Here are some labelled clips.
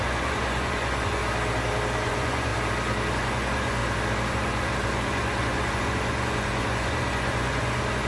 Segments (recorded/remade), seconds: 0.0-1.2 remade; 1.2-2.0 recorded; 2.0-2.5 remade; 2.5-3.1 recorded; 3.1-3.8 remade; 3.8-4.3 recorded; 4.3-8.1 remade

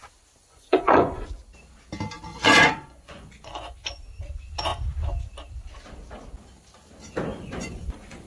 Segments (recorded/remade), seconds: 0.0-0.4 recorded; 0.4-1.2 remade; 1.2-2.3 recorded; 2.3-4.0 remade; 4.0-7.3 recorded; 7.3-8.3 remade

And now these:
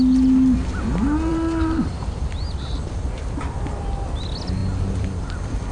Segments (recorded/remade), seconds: 0.0-1.3 recorded; 1.3-2.3 remade; 2.3-4.6 recorded; 4.6-5.2 remade; 5.2-5.7 recorded